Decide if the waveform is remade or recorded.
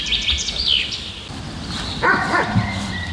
recorded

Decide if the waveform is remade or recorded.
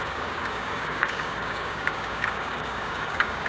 remade